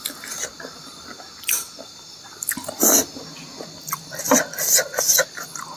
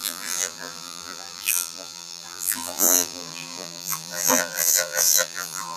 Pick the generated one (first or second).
second